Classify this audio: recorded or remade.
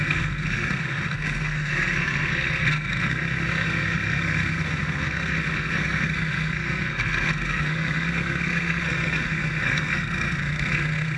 remade